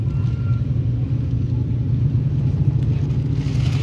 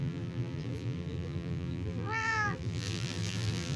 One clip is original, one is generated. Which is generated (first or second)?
second